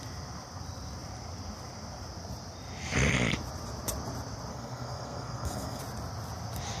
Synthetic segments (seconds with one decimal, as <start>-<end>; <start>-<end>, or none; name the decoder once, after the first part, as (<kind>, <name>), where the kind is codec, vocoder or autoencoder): 4.5-5.8 (codec, SNAC)